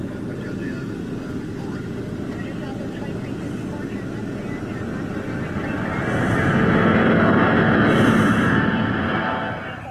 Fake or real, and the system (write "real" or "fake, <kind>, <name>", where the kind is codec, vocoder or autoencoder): real